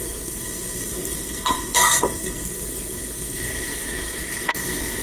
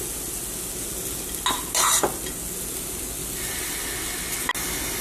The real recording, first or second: second